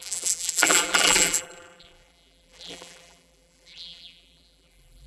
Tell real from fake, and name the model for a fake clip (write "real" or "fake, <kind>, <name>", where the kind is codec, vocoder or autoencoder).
fake, vocoder, BigVGAN v2